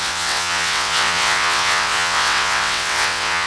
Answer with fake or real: fake